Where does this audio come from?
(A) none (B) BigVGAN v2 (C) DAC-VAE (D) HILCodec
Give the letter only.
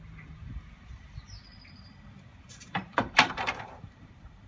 B